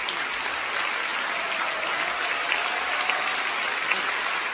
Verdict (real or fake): real